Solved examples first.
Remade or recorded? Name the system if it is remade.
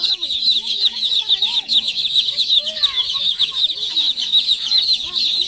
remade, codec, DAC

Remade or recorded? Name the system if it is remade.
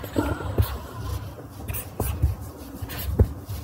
recorded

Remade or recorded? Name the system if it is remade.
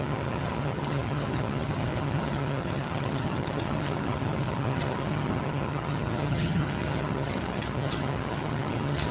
remade, vocoder, HiFi-GAN